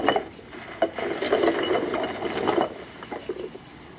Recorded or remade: recorded